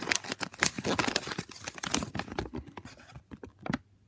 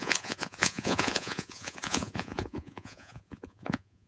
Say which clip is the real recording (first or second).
first